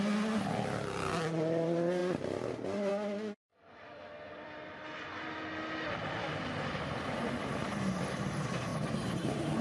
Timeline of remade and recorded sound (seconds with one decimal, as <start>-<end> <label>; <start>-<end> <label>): 0.0-3.5 recorded; 3.5-5.3 remade; 5.3-8.7 recorded; 8.7-9.6 remade